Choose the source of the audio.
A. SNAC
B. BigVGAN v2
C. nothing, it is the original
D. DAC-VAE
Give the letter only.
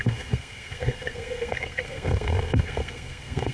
A